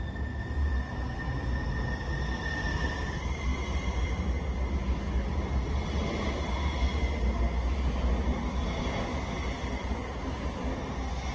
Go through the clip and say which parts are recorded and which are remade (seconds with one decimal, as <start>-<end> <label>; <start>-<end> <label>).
0.0-3.5 recorded; 3.5-4.3 remade; 4.3-11.3 recorded